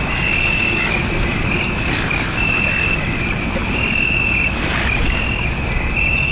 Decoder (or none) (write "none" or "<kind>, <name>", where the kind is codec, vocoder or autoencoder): none